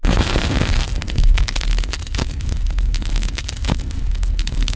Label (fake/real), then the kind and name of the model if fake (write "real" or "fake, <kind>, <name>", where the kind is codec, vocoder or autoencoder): fake, codec, SNAC